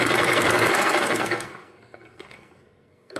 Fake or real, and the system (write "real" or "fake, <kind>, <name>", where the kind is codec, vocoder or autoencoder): fake, codec, SNAC